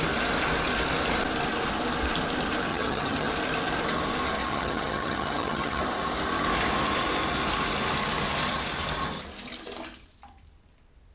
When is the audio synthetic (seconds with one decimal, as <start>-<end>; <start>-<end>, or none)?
2.7-3.3; 4.4-5.8